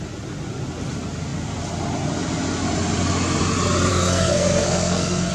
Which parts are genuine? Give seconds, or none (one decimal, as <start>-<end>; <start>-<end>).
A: 0.0-3.9